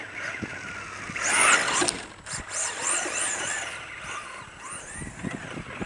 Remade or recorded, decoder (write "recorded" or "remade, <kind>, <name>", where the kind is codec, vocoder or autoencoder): recorded